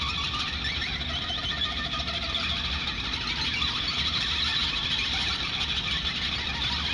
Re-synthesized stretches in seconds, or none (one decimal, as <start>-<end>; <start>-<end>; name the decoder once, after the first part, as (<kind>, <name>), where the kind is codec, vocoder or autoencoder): none